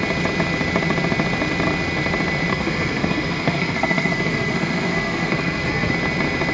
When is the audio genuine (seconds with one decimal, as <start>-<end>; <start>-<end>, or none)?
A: 0.0-2.5; 5.9-6.5